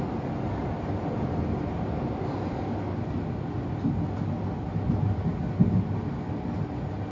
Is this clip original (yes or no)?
yes